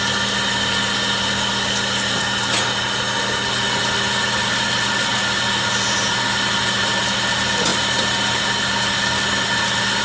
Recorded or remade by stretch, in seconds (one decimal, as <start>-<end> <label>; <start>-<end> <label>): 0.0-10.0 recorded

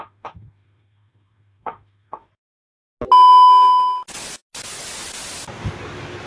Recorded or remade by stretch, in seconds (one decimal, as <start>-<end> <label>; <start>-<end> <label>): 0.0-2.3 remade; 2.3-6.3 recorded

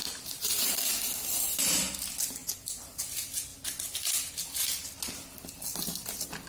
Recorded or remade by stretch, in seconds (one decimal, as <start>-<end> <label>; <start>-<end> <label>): 0.0-0.9 remade; 0.9-2.4 recorded; 2.4-3.0 remade; 3.0-6.5 recorded

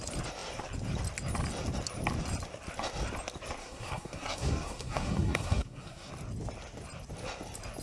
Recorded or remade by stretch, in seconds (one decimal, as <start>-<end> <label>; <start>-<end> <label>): 0.0-3.6 recorded; 3.6-6.1 remade; 6.1-7.8 recorded

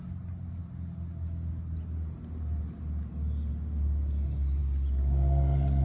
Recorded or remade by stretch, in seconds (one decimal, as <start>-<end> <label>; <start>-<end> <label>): 0.0-5.8 recorded